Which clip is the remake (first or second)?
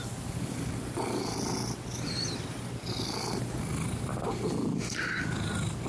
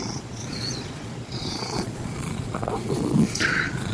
second